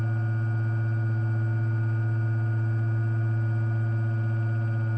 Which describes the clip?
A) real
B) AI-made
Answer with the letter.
A